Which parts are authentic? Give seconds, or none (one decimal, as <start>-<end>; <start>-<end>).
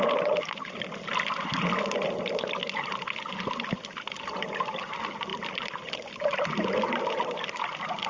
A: 0.0-5.3; 6.4-8.1